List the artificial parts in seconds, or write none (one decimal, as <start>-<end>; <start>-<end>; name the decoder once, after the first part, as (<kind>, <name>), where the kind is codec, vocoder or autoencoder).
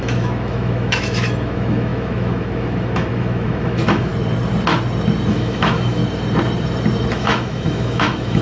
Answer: 0.0-4.1 (autoencoder, DAC-VAE); 5.3-6.0; 7.1-8.4